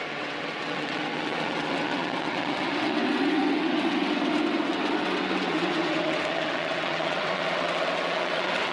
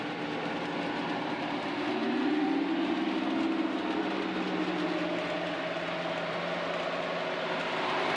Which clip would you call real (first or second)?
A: second